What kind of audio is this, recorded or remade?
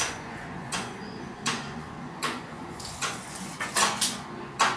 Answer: remade